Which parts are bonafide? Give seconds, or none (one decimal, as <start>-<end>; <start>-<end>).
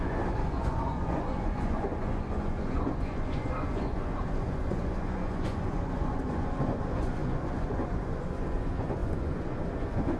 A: none